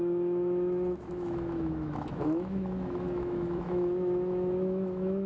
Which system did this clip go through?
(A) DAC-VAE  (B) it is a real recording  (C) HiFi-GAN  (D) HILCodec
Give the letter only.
A